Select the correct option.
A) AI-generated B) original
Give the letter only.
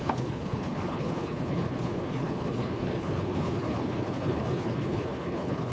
A